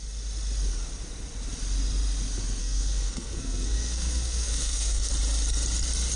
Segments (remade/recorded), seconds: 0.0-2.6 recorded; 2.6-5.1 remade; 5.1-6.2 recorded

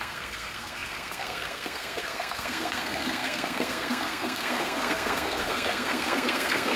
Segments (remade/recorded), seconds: 0.0-6.8 remade

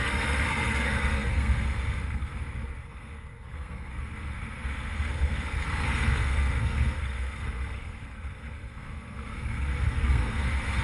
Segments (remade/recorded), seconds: 0.0-10.8 remade